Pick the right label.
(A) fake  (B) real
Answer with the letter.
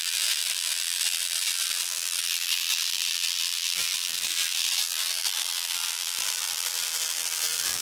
A